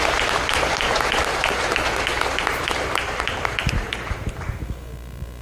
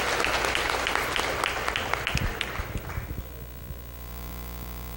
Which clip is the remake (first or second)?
first